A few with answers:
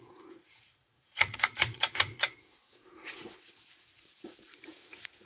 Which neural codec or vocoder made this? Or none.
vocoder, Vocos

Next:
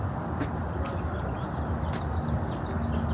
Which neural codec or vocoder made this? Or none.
none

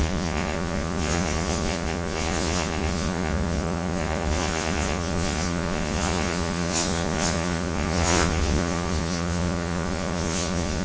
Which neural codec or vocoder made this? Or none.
vocoder, Vocos